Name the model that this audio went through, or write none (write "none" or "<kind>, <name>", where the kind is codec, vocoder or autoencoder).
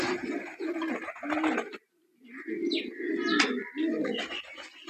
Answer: none